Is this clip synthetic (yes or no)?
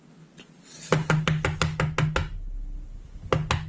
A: no